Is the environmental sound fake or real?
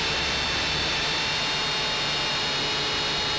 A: real